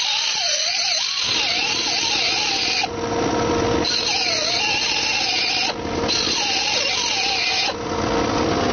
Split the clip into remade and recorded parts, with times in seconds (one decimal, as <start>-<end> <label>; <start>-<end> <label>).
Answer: 0.0-8.7 recorded